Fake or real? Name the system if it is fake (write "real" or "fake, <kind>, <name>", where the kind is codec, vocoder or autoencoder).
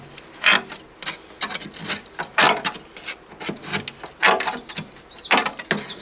real